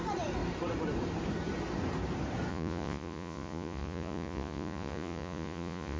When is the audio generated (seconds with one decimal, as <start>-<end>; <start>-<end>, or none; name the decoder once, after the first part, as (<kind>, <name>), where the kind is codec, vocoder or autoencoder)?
2.5-6.0 (vocoder, Vocos)